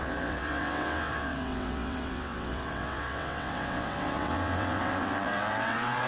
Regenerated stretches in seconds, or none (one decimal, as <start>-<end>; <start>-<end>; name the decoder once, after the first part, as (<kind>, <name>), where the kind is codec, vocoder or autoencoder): 0.0-6.1 (vocoder, WaveNeXt)

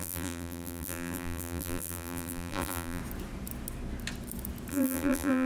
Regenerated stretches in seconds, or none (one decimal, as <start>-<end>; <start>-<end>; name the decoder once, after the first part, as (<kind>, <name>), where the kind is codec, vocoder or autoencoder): 0.0-3.0 (vocoder, BigVGAN v2); 4.7-5.5

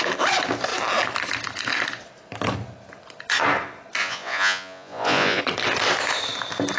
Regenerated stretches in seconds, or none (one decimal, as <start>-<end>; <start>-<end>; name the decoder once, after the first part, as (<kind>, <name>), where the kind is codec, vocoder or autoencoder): 4.0-5.4 (vocoder, Vocos)

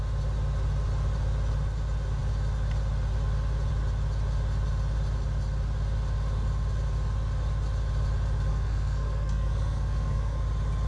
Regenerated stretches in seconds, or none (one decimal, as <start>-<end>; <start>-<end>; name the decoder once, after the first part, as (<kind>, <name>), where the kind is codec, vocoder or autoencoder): 8.5-10.4 (codec, SNAC)

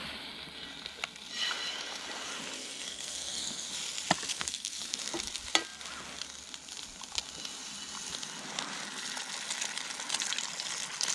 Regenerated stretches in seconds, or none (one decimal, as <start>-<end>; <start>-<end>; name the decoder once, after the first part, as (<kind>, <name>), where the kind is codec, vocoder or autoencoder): 2.6-3.7 (codec, SNAC); 4.3-5.0